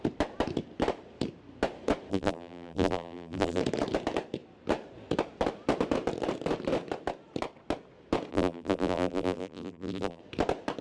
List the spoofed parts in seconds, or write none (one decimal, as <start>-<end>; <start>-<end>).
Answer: 2.1-3.6; 8.3-10.2